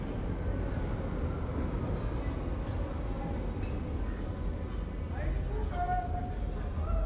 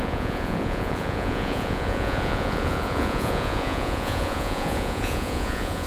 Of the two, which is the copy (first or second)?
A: second